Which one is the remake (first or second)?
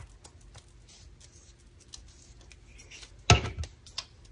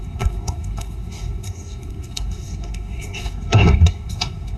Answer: second